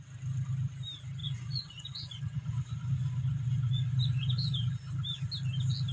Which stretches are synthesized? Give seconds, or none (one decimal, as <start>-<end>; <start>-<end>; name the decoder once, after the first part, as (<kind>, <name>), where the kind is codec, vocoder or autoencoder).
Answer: 1.2-4.7 (vocoder, Vocos)